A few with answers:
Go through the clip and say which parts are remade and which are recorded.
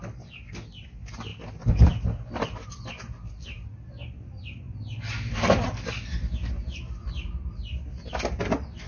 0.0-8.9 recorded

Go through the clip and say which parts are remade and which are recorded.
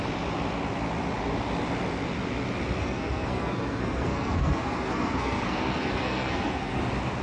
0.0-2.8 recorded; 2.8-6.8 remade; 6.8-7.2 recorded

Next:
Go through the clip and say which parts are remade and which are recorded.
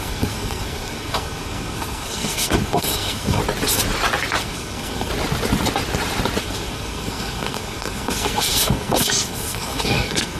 0.0-3.4 remade; 3.4-4.4 recorded; 4.4-5.1 remade; 5.1-6.4 recorded; 6.4-10.4 remade